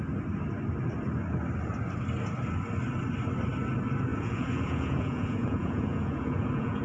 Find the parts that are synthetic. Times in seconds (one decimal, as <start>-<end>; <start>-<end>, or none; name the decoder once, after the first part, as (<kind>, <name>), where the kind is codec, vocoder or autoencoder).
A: 4.1-6.8 (vocoder, Vocos)